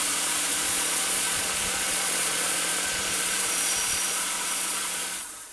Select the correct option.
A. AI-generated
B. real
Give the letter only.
A